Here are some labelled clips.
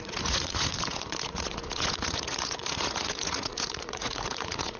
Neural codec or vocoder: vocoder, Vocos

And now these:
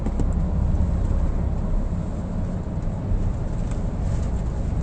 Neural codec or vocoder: none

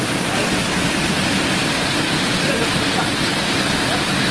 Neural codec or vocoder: none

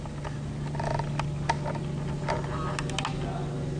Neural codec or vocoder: none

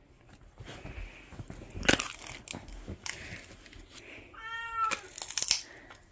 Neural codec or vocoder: none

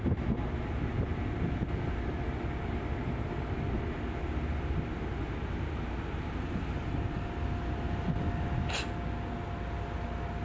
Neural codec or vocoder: none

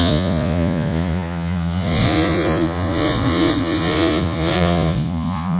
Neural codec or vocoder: vocoder, Vocos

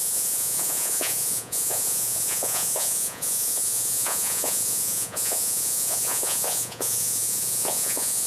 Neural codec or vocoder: vocoder, Vocos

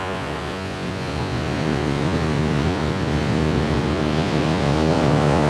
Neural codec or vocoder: vocoder, Vocos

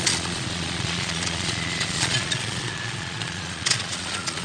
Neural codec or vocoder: vocoder, Vocos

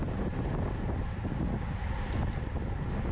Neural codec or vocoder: none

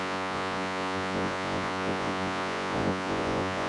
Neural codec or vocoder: vocoder, Vocos